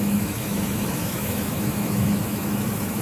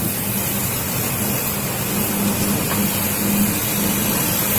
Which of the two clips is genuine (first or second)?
second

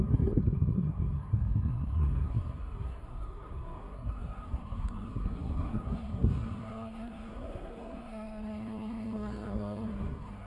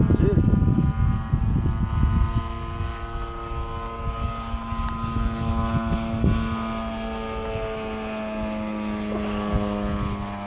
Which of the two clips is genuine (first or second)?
second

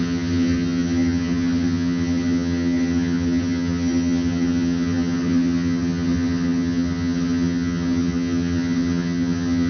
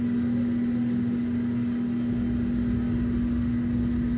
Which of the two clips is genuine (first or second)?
second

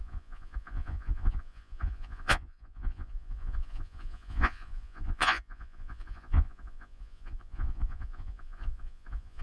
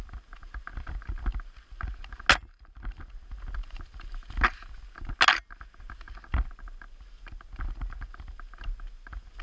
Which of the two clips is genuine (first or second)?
second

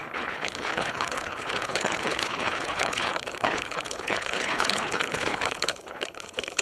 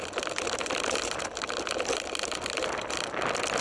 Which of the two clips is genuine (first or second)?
second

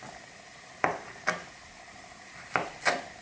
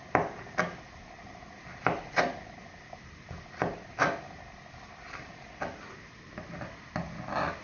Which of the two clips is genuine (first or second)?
second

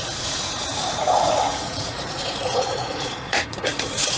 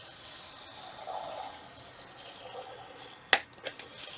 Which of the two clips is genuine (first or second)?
second